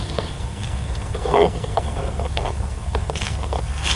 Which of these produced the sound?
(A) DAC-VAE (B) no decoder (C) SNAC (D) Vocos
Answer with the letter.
C